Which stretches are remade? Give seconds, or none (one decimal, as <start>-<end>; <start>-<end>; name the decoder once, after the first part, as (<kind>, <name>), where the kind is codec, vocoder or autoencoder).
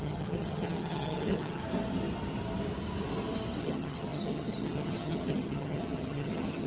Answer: 0.0-1.6 (vocoder, HiFi-GAN); 3.6-6.7